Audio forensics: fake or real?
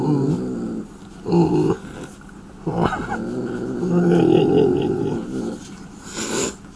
real